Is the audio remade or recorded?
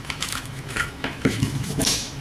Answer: remade